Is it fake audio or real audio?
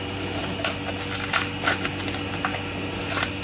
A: real